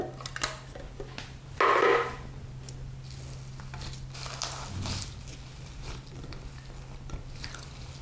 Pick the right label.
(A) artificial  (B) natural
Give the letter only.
B